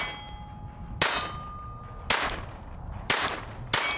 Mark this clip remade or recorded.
recorded